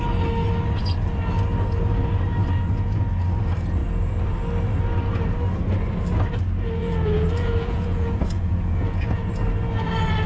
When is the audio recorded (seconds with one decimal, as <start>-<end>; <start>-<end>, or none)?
0.0-6.8; 9.3-10.3

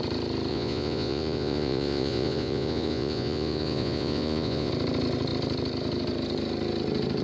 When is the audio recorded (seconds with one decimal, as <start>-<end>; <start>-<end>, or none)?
0.0-0.5; 4.7-7.2

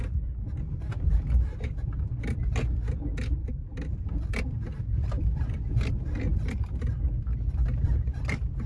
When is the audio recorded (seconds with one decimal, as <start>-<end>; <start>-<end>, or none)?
0.0-8.7

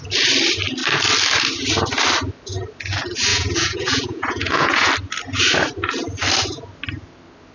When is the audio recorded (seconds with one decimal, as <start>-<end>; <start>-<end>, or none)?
0.0-3.3; 4.9-7.5

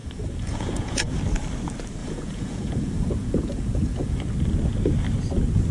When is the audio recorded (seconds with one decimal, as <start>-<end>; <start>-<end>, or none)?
1.2-2.0; 4.2-5.7

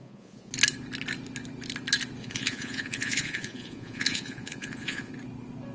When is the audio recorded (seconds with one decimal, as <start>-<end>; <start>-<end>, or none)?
0.5-2.2; 5.1-5.7

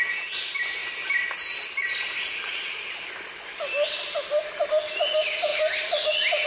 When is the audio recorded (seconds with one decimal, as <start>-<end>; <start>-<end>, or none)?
0.0-6.5

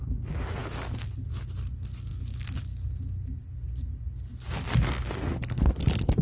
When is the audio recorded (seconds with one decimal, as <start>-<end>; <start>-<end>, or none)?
0.0-6.2